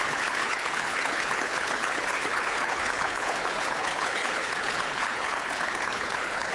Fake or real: fake